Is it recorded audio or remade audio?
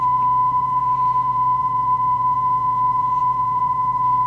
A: remade